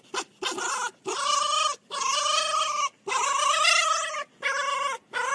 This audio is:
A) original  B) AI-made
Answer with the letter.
A